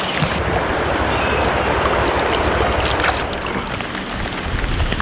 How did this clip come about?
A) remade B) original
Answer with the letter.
B